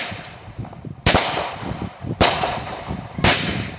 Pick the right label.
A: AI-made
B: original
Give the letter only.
A